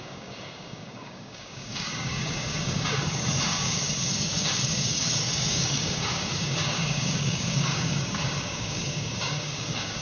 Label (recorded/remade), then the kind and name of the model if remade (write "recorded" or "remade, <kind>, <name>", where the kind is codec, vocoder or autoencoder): remade, codec, DAC